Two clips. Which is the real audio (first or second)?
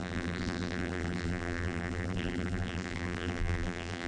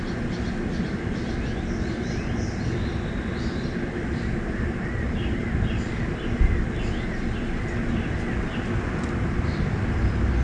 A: second